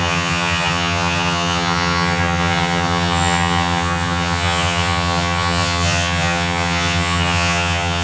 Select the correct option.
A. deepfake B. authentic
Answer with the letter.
A